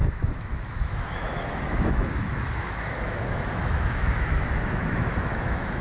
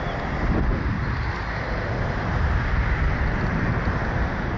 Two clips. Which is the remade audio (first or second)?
first